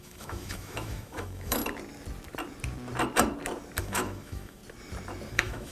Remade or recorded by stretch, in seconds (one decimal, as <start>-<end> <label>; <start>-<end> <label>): 0.0-1.6 remade; 1.6-3.8 recorded; 3.8-4.6 remade; 4.6-5.3 recorded; 5.3-5.7 remade